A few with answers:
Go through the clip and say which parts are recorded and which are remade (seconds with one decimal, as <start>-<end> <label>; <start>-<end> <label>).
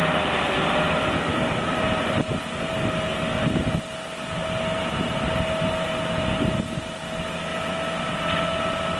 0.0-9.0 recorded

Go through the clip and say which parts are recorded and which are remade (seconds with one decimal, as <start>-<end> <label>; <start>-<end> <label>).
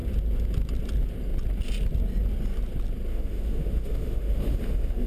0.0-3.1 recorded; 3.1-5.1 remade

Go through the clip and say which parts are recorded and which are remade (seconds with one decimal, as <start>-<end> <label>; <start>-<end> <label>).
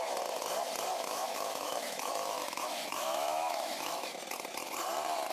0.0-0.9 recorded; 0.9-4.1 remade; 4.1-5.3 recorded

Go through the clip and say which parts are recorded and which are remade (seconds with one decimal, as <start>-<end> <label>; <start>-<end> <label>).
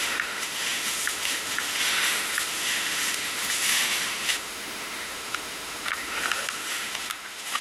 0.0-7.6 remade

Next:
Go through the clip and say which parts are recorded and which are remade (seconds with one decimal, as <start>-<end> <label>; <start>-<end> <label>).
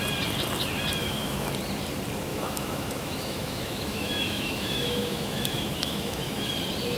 0.0-1.0 recorded; 1.0-1.5 remade; 1.5-2.3 recorded; 2.3-6.5 remade; 6.5-7.0 recorded